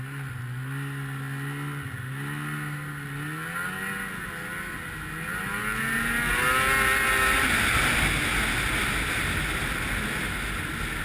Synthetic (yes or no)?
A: no